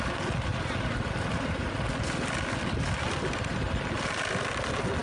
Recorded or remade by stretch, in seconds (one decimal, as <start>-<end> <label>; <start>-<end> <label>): 0.0-5.0 recorded

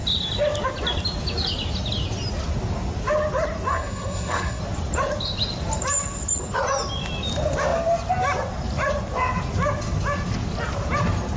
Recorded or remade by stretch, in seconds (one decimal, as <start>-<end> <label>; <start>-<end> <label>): 0.0-3.7 recorded; 3.7-4.6 remade; 4.6-11.4 recorded

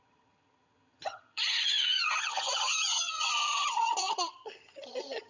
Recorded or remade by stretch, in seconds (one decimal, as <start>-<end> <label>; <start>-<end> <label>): 0.0-5.3 remade

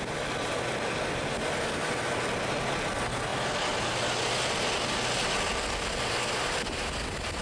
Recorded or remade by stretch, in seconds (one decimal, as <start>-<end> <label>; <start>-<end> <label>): 0.0-7.4 recorded

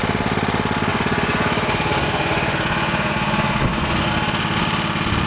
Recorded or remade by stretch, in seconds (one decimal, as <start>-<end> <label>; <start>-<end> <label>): 0.0-0.9 recorded; 0.9-4.1 remade; 4.1-5.3 recorded

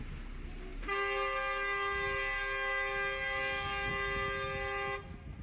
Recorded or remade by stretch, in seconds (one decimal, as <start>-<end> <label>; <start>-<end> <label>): 0.0-5.4 recorded

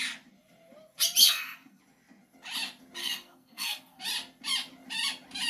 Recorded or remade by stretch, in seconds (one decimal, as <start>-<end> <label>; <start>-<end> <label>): 0.0-1.2 recorded; 1.2-1.8 remade; 1.8-3.0 recorded; 3.0-4.0 remade; 4.0-5.5 recorded

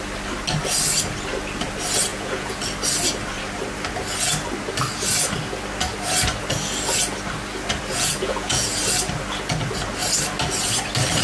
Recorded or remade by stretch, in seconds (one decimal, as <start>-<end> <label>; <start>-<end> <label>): 0.0-2.1 recorded; 2.1-2.6 remade; 2.6-7.9 recorded; 7.9-8.8 remade; 8.8-11.2 recorded